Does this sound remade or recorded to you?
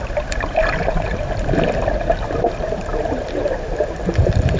recorded